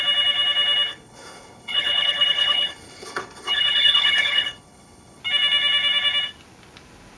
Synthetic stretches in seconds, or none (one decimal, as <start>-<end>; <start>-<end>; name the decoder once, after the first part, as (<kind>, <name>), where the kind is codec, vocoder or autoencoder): 0.9-5.2 (codec, HILCodec)

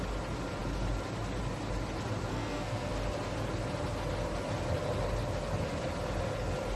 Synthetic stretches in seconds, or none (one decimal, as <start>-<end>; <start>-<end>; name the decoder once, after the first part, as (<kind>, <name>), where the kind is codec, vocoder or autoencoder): 2.3-2.9 (codec, SNAC)

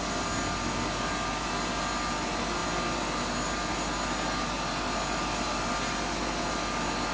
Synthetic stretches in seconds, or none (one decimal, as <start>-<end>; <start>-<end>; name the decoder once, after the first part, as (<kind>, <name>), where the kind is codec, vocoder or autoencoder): none

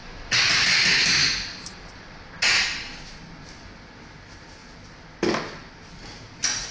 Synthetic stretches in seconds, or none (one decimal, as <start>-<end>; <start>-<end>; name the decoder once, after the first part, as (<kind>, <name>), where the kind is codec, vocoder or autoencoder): none

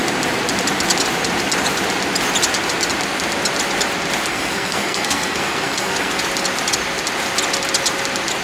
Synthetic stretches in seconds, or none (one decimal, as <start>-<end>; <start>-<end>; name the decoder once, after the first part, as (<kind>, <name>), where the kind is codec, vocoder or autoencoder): 4.3-6.2 (codec, SNAC)

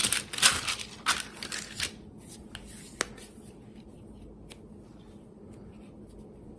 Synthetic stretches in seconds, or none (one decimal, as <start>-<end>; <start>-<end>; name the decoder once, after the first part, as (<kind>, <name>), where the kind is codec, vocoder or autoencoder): none

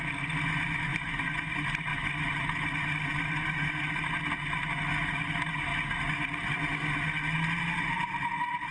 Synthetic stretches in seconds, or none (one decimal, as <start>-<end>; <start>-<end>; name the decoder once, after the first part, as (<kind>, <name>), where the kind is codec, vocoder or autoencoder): 0.9-1.5 (vocoder, BigVGAN v2); 1.9-2.4; 3.1-4.1